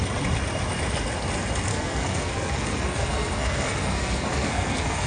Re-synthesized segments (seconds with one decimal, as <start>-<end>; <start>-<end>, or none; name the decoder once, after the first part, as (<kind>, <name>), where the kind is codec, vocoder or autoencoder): 1.7-5.1 (codec, SNAC)